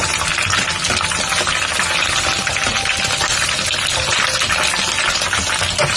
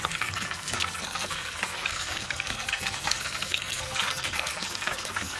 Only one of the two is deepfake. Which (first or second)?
second